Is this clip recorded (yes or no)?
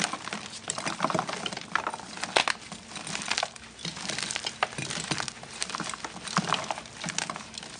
yes